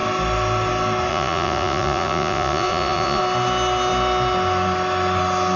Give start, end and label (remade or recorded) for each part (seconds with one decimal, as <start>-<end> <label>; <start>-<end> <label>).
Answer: 0.0-1.1 recorded; 1.1-3.2 remade; 3.2-5.6 recorded